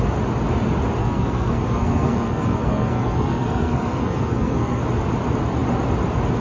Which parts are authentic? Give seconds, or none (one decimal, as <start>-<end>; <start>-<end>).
0.0-1.0; 4.8-6.4